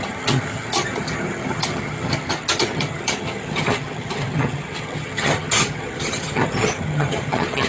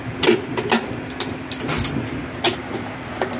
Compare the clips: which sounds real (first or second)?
second